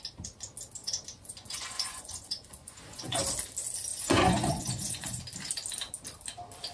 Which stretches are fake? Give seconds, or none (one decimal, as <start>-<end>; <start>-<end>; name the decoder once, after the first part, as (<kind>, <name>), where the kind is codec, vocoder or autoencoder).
0.8-3.2 (vocoder, Vocos); 3.9-5.2